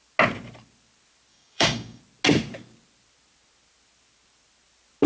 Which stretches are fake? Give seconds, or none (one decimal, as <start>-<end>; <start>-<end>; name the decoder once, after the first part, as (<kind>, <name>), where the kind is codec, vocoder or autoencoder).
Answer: 1.3-2.0 (codec, DAC)